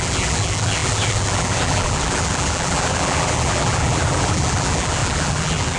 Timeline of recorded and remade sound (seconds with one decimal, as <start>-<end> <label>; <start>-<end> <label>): 0.0-5.8 remade